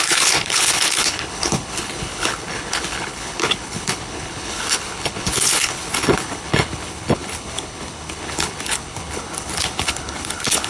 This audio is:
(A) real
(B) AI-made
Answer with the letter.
B